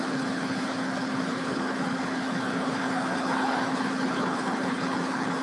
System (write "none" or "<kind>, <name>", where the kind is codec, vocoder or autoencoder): codec, HILCodec